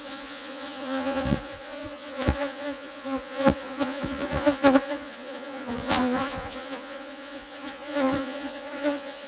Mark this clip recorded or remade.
remade